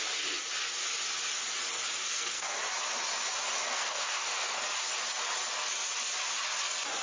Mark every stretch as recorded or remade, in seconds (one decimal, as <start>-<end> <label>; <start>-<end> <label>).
0.0-2.0 recorded; 2.0-2.6 remade; 2.6-3.7 recorded; 3.7-4.6 remade; 4.6-7.0 recorded